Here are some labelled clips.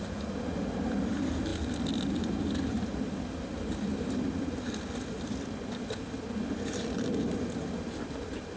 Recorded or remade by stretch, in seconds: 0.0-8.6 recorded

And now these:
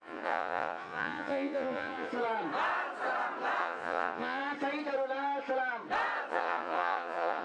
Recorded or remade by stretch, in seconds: 0.0-2.1 remade; 2.1-3.6 recorded; 3.6-4.4 remade; 4.4-6.3 recorded; 6.3-7.4 remade

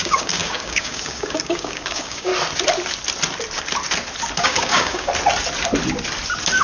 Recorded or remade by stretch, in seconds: 0.0-2.3 remade; 2.3-4.4 recorded; 4.4-5.1 remade; 5.1-6.6 recorded

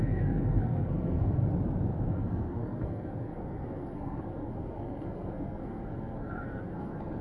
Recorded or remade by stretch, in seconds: 0.0-1.4 remade; 1.4-2.1 recorded; 2.1-7.2 remade

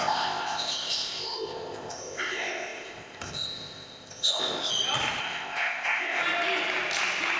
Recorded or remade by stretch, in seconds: 0.0-4.7 remade; 4.7-5.2 recorded; 5.2-6.2 remade; 6.2-7.4 recorded